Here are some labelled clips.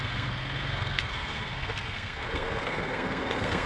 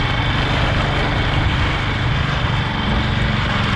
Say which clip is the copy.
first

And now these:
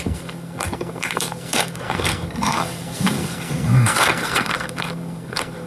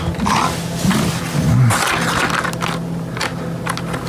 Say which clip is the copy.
first